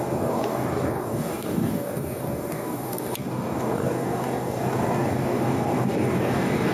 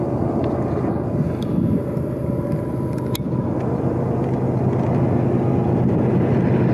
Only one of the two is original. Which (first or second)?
second